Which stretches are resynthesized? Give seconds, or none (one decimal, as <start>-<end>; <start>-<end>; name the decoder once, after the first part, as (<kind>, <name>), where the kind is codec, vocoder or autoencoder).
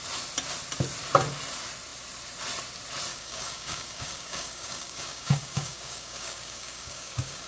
3.1-7.5 (codec, DAC)